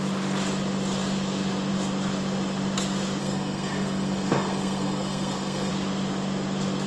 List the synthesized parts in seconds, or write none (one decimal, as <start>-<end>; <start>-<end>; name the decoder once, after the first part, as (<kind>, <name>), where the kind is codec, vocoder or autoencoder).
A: 3.2-5.7 (codec, SNAC)